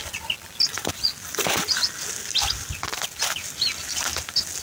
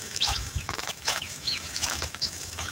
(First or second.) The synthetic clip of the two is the second